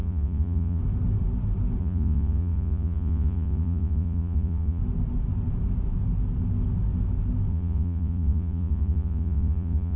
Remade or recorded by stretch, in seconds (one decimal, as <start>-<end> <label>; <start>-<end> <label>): 0.0-0.8 remade; 0.8-1.8 recorded; 1.8-4.8 remade; 4.8-7.5 recorded; 7.5-10.0 remade